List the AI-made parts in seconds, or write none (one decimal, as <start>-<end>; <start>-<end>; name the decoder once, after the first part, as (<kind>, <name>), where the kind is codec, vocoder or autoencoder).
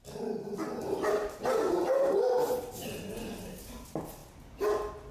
none